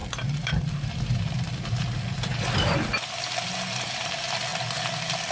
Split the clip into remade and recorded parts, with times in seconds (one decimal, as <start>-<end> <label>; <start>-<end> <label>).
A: 0.0-3.2 remade; 3.2-4.5 recorded; 4.5-5.3 remade